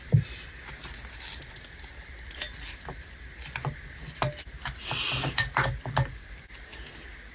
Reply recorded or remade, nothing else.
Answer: recorded